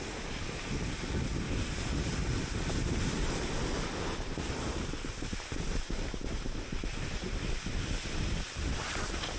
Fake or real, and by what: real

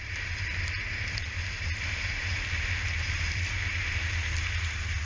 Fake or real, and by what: real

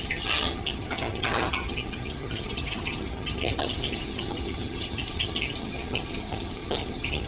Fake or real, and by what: fake, vocoder, HiFi-GAN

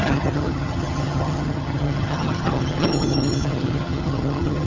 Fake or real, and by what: fake, vocoder, HiFi-GAN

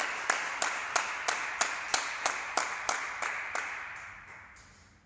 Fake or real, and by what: real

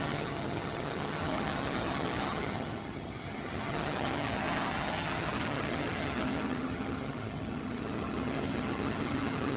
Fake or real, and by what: fake, vocoder, HiFi-GAN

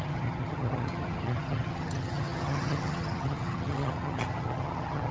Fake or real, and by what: fake, vocoder, HiFi-GAN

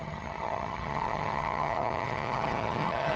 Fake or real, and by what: fake, vocoder, HiFi-GAN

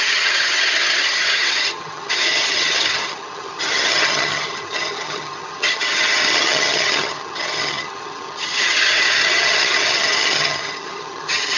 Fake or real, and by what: fake, vocoder, HiFi-GAN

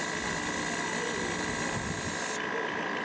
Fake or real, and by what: real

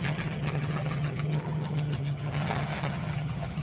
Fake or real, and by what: fake, vocoder, HiFi-GAN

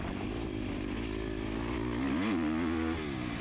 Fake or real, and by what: real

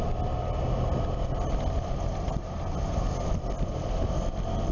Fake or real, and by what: real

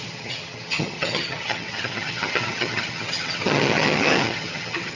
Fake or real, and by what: fake, vocoder, HiFi-GAN